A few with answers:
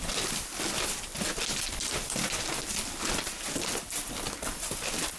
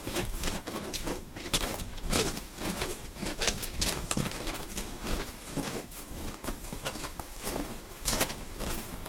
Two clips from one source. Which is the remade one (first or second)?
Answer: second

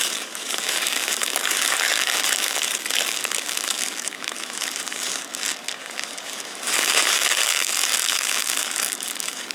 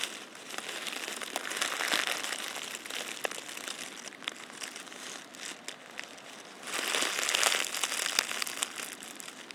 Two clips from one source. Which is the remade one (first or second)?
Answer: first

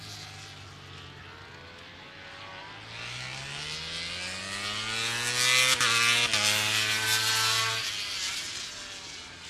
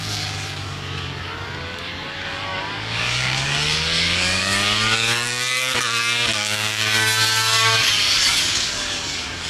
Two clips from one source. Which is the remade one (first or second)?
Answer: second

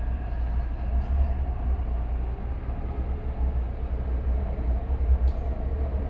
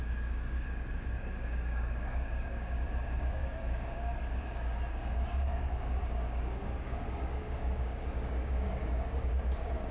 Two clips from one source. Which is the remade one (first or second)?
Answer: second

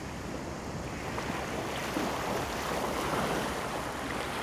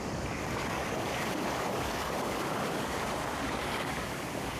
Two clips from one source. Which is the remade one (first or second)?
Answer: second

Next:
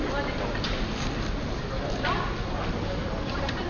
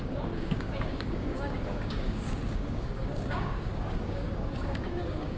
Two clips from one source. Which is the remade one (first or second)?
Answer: second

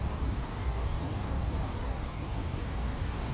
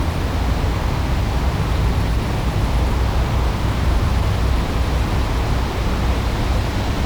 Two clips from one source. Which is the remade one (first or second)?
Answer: first